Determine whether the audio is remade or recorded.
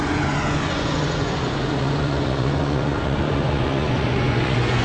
remade